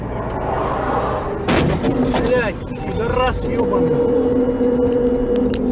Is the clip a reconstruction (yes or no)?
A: no